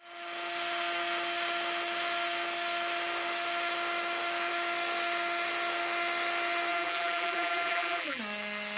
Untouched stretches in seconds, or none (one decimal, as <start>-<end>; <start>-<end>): 0.0-6.7; 8.2-8.8